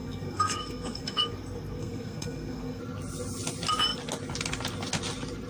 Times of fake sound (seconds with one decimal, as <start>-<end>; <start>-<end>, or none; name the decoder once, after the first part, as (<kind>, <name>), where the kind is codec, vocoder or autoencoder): 0.0-2.8 (codec, SNAC)